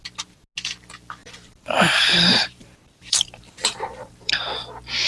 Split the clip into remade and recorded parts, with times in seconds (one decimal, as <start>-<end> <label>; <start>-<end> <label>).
0.0-1.2 recorded; 1.2-4.3 remade; 4.3-5.1 recorded